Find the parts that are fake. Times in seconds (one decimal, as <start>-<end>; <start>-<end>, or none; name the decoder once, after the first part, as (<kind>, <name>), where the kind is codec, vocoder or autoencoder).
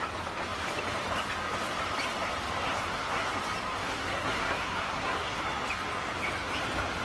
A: 2.7-3.3 (codec, SNAC); 3.8-5.4